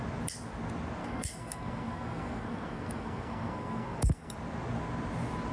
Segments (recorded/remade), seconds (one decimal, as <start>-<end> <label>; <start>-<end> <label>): 0.0-1.0 recorded; 1.0-4.3 remade; 4.3-5.5 recorded